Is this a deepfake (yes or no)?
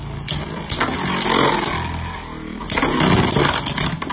no